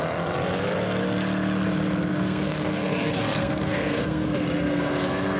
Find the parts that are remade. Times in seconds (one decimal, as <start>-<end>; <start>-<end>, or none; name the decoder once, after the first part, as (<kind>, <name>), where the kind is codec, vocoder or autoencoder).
2.1-5.4 (codec, SNAC)